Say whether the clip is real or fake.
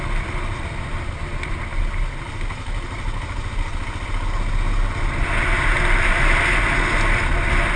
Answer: real